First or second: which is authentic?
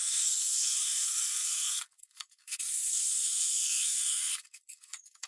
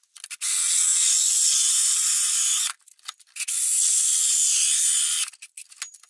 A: second